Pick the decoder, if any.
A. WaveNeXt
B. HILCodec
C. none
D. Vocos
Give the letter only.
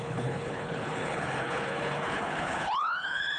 B